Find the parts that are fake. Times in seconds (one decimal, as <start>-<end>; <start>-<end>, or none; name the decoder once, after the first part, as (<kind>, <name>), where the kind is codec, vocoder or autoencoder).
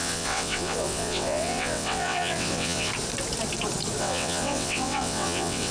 0.0-2.9 (vocoder, WaveNeXt); 4.0-5.7